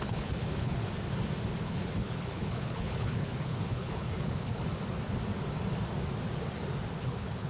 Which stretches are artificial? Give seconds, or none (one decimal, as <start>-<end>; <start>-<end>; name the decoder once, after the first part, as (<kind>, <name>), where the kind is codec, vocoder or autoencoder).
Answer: 0.0-0.8 (codec, HILCodec); 1.6-4.6; 6.9-7.5